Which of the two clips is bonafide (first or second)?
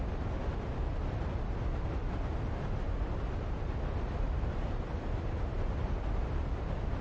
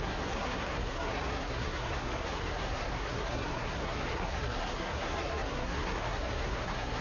first